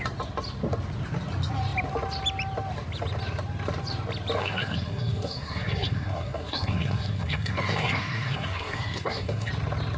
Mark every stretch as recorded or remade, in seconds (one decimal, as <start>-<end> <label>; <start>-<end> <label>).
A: 0.0-4.4 recorded; 4.4-9.5 remade; 9.5-10.0 recorded